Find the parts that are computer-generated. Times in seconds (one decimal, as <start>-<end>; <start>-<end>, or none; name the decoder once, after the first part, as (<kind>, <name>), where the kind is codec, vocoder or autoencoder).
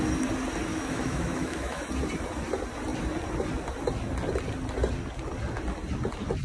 0.7-1.9 (autoencoder, DAC-VAE)